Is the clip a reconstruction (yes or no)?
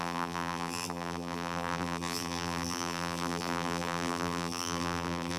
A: yes